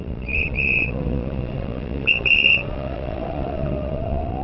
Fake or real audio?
fake